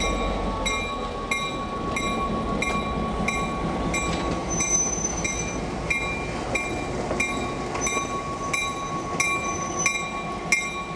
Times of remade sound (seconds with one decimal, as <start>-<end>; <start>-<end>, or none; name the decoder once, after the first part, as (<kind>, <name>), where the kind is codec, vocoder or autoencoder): none